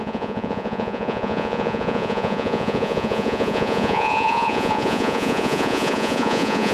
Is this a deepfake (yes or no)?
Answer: yes